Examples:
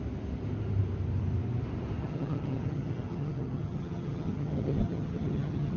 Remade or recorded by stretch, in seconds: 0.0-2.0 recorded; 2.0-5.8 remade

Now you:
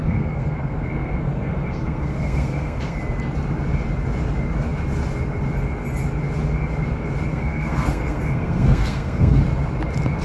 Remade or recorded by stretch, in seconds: 0.0-3.0 remade; 3.0-7.3 recorded; 7.3-9.4 remade; 9.4-10.2 recorded

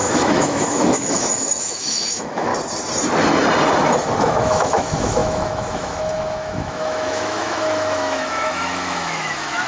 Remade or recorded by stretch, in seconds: 0.0-2.5 remade; 2.5-4.2 recorded; 4.2-9.7 remade

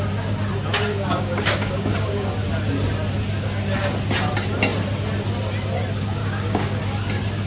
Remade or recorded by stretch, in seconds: 0.0-0.9 recorded; 0.9-2.3 remade; 2.3-6.2 recorded; 6.2-6.8 remade; 6.8-7.5 recorded